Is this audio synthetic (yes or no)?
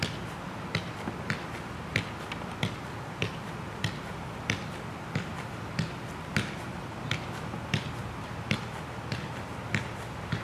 no